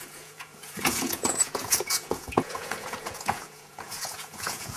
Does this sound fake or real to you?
fake